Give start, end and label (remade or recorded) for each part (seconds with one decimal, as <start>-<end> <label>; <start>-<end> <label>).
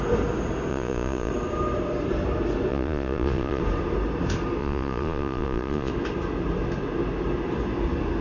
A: 0.0-0.7 recorded; 0.7-1.3 remade; 1.3-2.7 recorded; 2.7-3.6 remade; 3.6-4.6 recorded; 4.6-5.9 remade; 5.9-8.2 recorded